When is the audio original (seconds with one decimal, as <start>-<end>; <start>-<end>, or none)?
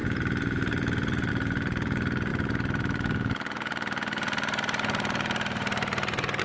none